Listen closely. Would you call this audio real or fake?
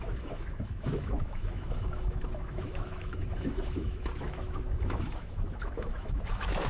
fake